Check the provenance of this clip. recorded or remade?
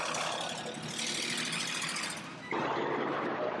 recorded